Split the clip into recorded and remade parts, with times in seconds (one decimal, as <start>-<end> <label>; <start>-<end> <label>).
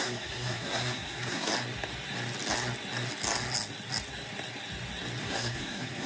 0.0-1.5 remade; 1.5-5.2 recorded; 5.2-6.1 remade